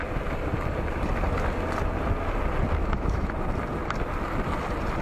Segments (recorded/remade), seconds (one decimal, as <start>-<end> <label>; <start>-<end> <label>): 0.0-2.8 recorded; 2.8-3.3 remade; 3.3-5.0 recorded